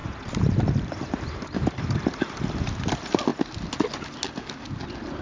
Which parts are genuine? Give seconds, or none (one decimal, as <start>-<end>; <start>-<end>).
2.9-5.2